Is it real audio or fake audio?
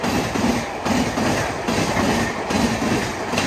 real